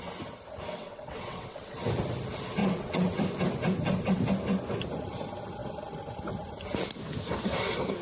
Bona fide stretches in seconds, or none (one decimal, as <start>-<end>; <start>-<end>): 0.0-0.8; 1.8-2.6; 3.2-8.0